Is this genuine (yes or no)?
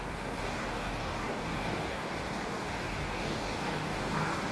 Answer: no